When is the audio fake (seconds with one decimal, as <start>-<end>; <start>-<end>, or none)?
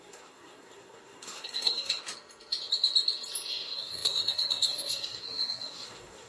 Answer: 0.0-2.0; 3.5-6.3